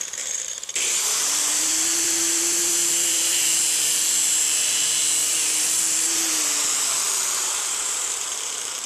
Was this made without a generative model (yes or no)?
no